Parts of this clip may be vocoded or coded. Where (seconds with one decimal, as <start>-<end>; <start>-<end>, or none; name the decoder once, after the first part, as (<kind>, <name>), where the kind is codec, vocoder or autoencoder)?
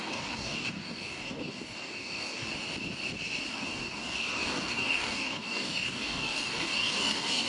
0.0-2.5 (codec, DAC); 3.5-7.5